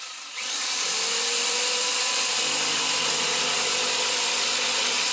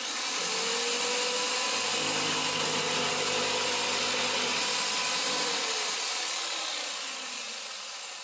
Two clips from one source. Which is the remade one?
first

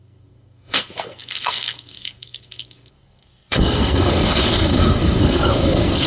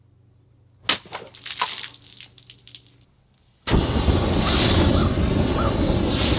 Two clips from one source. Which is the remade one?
first